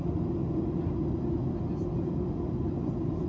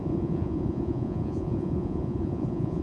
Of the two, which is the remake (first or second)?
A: second